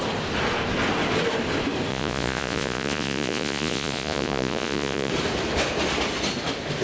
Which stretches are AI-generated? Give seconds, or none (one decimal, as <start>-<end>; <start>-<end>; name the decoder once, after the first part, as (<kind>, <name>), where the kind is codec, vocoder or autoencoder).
1.9-5.1 (vocoder, Vocos)